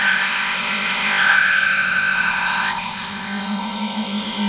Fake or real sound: fake